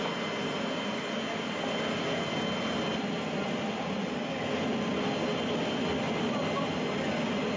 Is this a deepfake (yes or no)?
no